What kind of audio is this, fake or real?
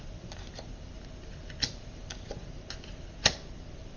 real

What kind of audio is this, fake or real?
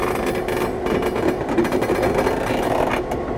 real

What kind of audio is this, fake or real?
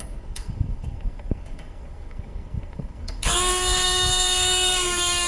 fake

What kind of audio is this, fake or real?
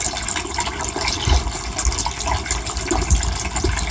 real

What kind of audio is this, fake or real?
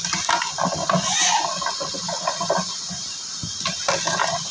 real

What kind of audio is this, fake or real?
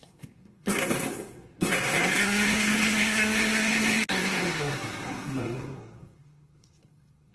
fake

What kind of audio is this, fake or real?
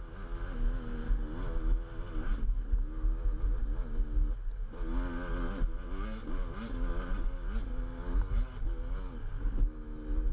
real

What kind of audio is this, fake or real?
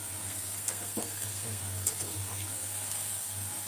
fake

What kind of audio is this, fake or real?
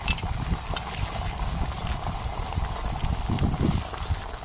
real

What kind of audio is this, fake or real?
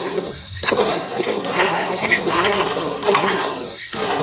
fake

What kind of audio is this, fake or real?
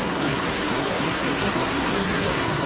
fake